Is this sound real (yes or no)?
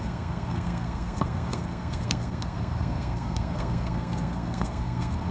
no